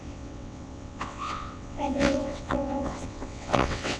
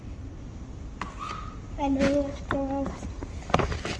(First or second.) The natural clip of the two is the second